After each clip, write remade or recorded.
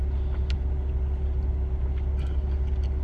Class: recorded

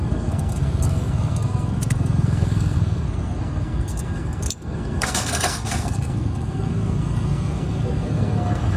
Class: remade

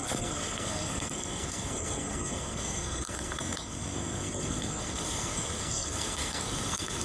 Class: remade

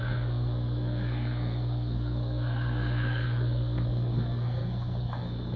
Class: remade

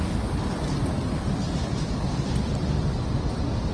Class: recorded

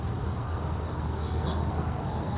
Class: remade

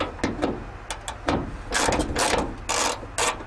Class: recorded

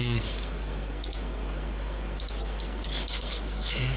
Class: remade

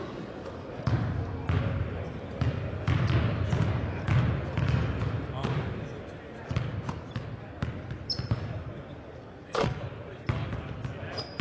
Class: recorded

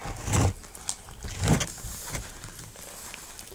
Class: recorded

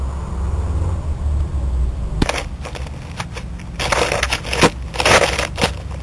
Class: recorded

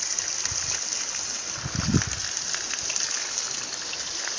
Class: recorded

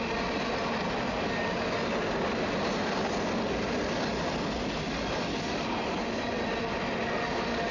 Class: recorded